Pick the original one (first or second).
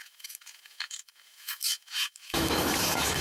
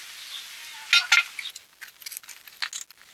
second